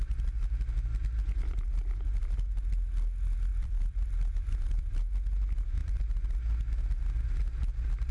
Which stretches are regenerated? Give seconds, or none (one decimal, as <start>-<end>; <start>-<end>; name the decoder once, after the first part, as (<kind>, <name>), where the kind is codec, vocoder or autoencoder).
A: 3.5-4.8 (vocoder, BigVGAN v2); 5.8-6.4